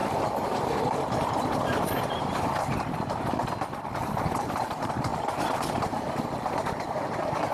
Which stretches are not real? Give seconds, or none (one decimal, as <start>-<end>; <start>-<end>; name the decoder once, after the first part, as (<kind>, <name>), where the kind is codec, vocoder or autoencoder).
0.0-3.4 (vocoder, BigVGAN v2); 4.4-7.5